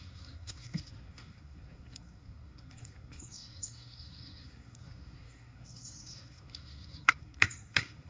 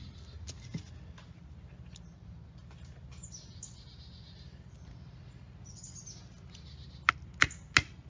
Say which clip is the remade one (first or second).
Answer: first